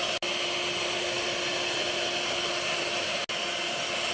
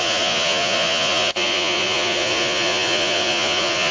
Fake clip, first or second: second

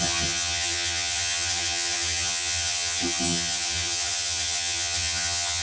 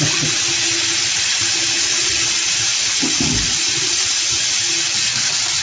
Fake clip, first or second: first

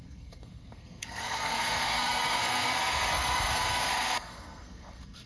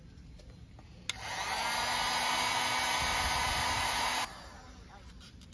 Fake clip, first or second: first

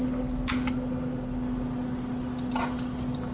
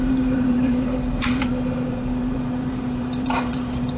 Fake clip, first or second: second